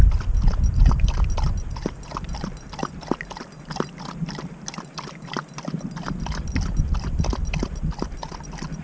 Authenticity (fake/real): real